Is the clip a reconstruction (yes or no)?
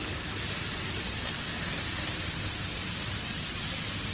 no